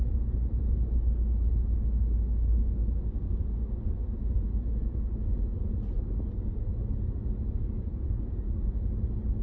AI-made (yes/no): no